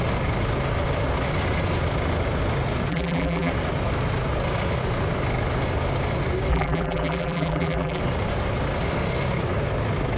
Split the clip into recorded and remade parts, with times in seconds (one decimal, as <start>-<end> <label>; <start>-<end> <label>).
0.0-2.9 recorded; 2.9-3.5 remade; 3.5-6.5 recorded; 6.5-8.0 remade; 8.0-10.2 recorded